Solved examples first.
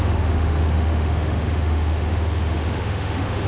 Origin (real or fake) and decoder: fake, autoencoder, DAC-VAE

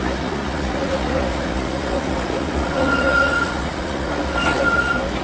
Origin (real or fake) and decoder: fake, vocoder, Vocos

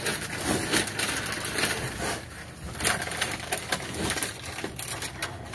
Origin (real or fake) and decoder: real